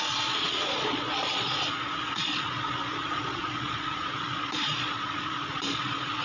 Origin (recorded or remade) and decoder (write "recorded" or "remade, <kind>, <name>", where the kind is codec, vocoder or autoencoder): remade, vocoder, Vocos